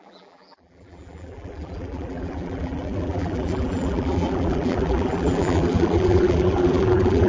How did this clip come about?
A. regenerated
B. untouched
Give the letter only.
A